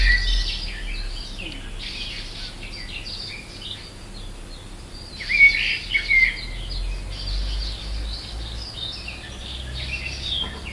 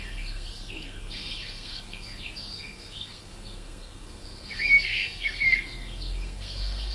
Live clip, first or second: first